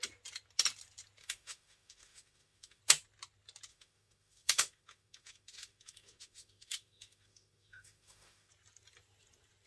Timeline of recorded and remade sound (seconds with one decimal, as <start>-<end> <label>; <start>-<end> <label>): 0.0-1.2 recorded; 1.2-2.8 remade; 2.8-3.7 recorded; 3.7-8.5 remade; 8.5-9.7 recorded